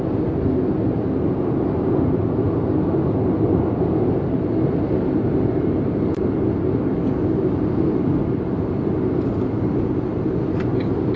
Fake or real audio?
real